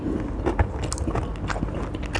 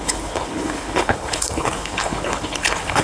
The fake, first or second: second